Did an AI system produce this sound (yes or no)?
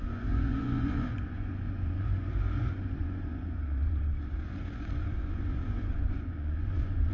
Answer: yes